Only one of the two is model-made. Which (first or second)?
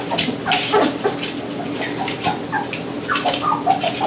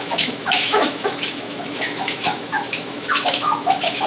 second